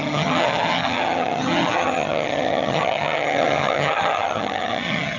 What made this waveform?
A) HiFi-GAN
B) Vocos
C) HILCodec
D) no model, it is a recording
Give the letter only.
A